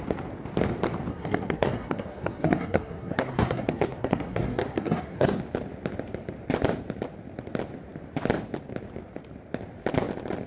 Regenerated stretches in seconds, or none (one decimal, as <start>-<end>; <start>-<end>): 1.1-5.4